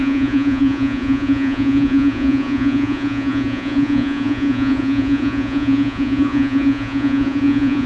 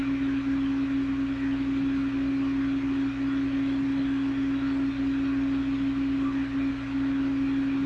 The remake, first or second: first